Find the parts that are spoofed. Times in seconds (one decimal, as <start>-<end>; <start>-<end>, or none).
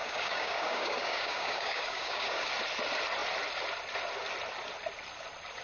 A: 0.0-2.5